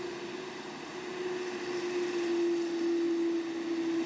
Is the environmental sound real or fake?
real